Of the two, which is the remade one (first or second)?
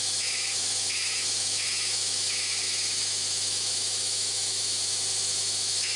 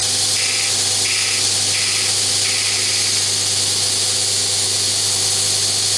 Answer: first